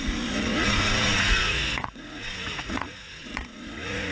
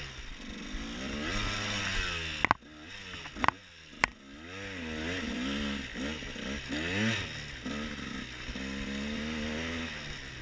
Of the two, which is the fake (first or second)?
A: first